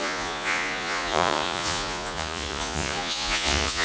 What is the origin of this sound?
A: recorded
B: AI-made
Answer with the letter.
B